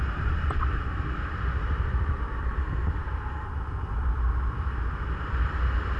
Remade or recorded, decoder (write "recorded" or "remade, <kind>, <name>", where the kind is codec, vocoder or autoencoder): recorded